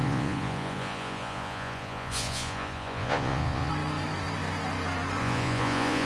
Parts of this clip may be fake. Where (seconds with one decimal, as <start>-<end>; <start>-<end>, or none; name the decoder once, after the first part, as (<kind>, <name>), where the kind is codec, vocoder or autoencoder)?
0.0-3.7 (vocoder, Vocos); 5.2-6.1